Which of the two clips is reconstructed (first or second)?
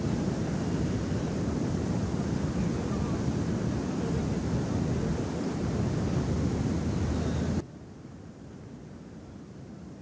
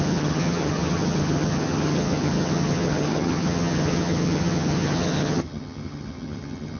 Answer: second